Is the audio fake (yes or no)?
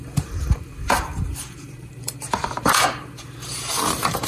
yes